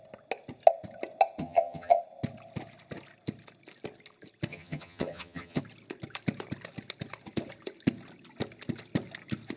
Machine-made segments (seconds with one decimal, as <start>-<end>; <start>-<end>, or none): 1.4-2.0; 4.5-5.6